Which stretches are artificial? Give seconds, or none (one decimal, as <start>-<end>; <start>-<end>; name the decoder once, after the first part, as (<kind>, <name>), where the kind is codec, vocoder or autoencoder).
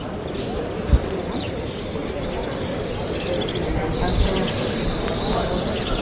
0.0-2.0 (vocoder, BigVGAN v2); 5.6-6.0